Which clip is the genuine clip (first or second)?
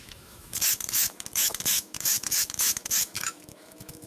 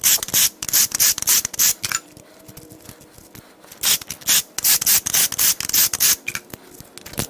second